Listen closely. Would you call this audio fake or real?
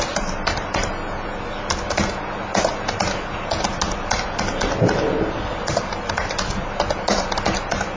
real